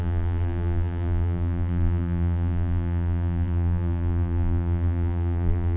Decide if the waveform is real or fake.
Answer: fake